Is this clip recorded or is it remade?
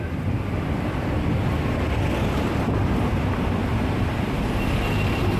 remade